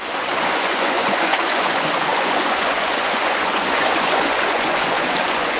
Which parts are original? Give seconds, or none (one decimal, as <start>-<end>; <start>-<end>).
none